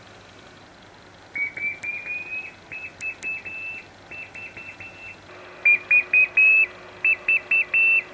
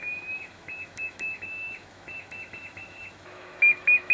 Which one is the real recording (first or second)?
first